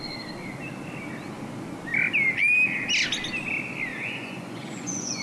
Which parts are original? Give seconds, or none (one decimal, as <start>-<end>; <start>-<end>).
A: 0.0-3.9